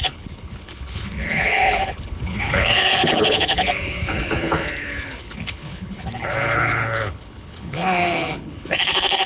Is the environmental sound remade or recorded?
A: remade